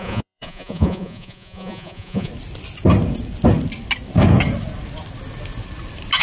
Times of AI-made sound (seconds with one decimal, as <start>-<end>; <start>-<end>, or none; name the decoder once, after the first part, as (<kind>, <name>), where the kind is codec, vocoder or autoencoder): 0.0-2.3 (vocoder, Vocos)

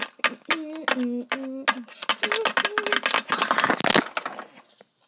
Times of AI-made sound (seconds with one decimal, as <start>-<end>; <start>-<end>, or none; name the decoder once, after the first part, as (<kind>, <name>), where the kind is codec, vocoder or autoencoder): none

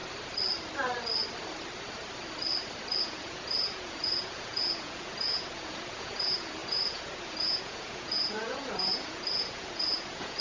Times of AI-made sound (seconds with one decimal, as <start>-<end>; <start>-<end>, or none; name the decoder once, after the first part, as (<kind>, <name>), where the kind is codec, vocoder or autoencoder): 3.0-10.4 (vocoder, Vocos)

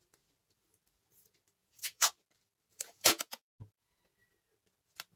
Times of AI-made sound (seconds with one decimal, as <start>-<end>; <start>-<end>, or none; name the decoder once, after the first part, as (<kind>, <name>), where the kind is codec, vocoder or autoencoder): 1.6-2.1 (vocoder, Vocos); 2.7-4.0